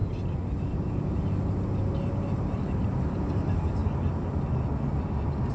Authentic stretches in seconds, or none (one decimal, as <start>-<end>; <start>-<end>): 0.0-5.5